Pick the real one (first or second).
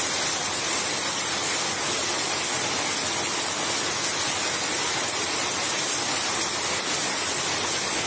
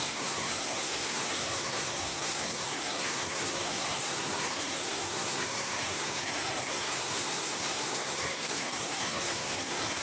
first